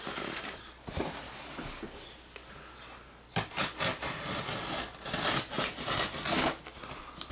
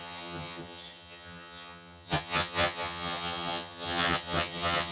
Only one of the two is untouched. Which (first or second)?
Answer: first